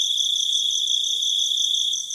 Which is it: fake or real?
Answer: fake